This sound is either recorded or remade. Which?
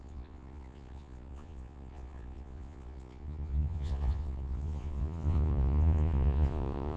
remade